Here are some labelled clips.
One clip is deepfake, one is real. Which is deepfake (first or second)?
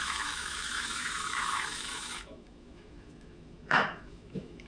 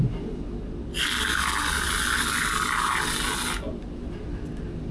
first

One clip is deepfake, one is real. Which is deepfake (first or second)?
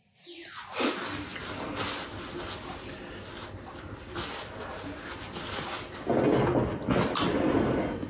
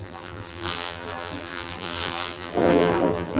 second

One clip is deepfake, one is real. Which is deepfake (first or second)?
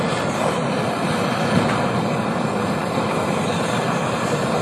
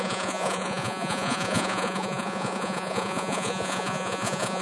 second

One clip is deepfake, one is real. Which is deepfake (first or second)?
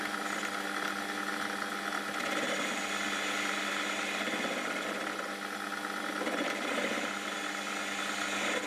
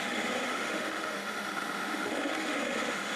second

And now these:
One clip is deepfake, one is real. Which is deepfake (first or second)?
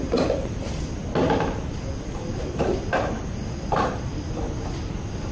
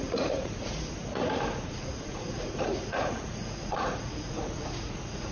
second